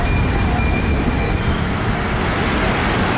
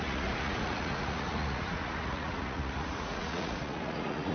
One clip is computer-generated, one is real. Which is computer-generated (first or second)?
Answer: second